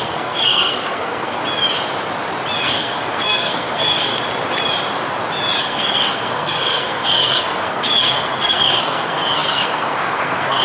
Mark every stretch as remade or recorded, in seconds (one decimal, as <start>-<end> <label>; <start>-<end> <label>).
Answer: 0.0-1.4 remade; 1.4-2.6 recorded; 2.6-4.1 remade; 4.1-5.6 recorded; 5.6-10.6 remade